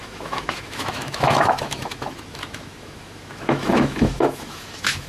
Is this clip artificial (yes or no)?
yes